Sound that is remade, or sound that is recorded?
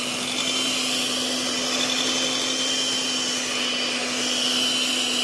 recorded